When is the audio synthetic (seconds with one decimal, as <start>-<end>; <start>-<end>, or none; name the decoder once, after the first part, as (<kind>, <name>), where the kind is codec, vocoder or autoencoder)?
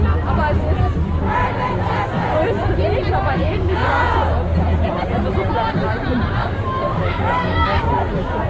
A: 3.4-4.0 (codec, DAC); 6.4-7.8